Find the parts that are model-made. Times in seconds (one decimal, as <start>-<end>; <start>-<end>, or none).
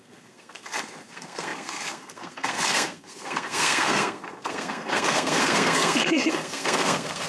0.0-7.3